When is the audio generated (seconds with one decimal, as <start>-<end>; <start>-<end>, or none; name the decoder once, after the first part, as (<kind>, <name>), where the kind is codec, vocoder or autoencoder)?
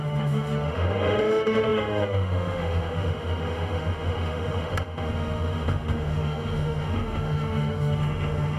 0.0-8.6 (autoencoder, DAC-VAE)